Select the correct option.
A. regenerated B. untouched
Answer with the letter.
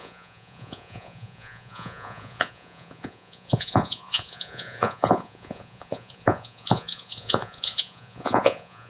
A